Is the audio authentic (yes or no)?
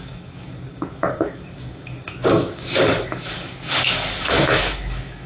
no